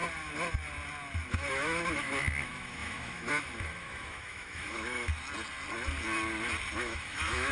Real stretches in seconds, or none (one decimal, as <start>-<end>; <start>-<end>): 0.0-1.3; 5.1-6.8

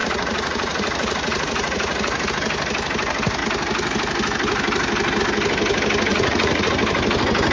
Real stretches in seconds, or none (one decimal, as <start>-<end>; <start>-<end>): 2.3-6.1; 6.7-7.5

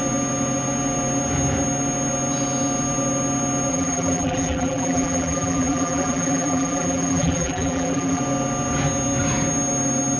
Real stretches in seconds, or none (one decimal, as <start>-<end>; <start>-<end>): 0.0-3.7; 8.2-10.2

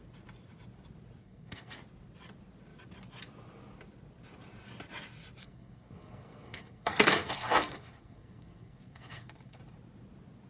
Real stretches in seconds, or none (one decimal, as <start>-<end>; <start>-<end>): 0.0-1.2; 1.8-5.4; 9.6-10.5

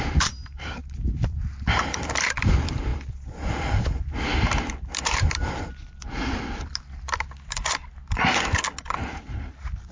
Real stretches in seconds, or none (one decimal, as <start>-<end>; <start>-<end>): 0.8-1.7; 2.9-3.6; 4.3-9.1

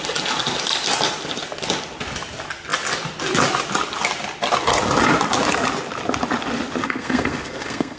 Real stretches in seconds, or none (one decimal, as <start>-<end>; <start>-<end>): 0.0-6.8

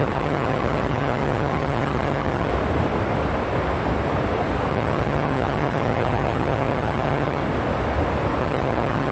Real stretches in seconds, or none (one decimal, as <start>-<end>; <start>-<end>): 2.5-4.7; 7.4-8.4